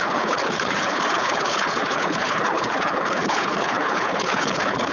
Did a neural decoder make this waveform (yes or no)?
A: yes